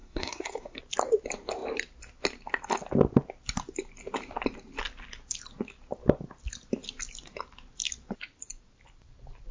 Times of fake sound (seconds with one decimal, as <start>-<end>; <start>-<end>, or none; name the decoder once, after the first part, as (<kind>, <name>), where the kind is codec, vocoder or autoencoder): 0.0-0.8 (codec, SNAC)